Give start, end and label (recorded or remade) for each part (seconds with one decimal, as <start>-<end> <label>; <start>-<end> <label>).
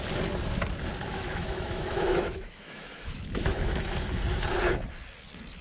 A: 0.0-1.1 recorded; 1.1-3.9 remade; 3.9-5.6 recorded